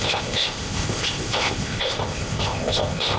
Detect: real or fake fake